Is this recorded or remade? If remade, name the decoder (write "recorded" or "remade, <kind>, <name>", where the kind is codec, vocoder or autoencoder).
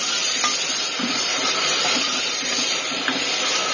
recorded